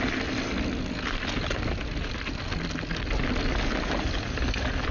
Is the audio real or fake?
real